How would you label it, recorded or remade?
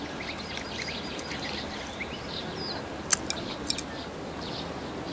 recorded